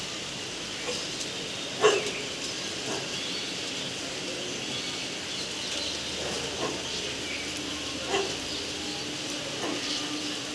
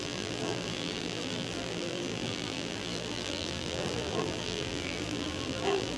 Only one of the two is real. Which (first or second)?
first